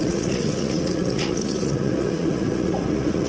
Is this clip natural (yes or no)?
no